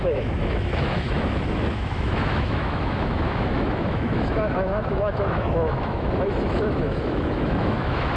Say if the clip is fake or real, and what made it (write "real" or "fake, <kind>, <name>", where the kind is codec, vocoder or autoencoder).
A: fake, autoencoder, DAC-VAE